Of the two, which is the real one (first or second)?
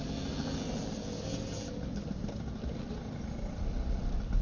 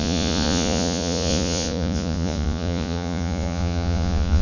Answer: first